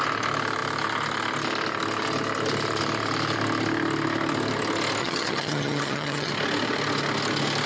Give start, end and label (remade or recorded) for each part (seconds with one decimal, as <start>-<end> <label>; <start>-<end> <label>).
0.0-5.0 recorded; 5.0-6.3 remade; 6.3-7.7 recorded